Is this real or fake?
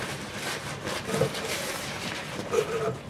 fake